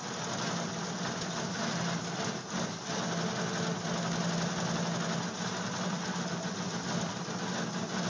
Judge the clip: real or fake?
real